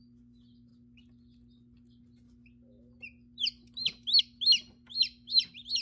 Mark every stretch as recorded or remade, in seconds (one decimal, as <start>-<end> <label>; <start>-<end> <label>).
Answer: 0.0-5.8 recorded

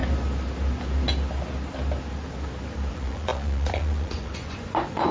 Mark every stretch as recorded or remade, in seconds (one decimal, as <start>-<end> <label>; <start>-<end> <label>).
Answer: 0.0-2.9 recorded; 2.9-5.1 remade

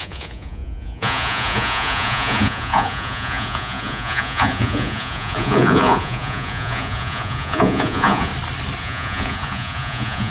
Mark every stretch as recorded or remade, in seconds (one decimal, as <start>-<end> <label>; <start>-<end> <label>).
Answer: 0.0-8.3 remade; 8.3-8.8 recorded; 8.8-10.3 remade

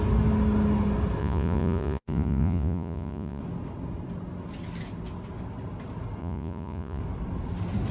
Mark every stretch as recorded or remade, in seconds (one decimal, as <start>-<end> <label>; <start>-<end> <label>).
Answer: 0.0-1.2 recorded; 1.2-3.4 remade; 3.4-6.2 recorded; 6.2-7.0 remade; 7.0-7.9 recorded

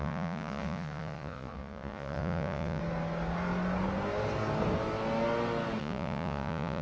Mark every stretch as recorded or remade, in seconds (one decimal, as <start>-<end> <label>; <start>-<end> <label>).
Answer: 0.0-2.8 remade; 2.8-5.8 recorded; 5.8-6.8 remade

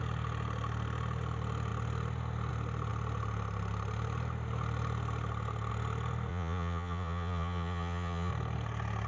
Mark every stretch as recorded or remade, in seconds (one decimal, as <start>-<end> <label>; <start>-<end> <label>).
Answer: 0.0-6.3 recorded; 6.3-8.3 remade; 8.3-9.1 recorded

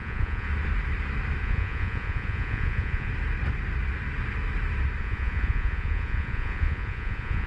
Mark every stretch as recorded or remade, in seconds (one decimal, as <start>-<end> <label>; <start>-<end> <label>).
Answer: 0.0-0.5 remade; 0.5-1.4 recorded; 1.4-3.1 remade; 3.1-5.0 recorded; 5.0-7.5 remade